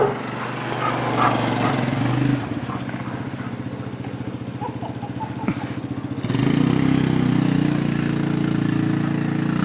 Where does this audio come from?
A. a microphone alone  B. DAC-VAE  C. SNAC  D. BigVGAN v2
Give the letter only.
A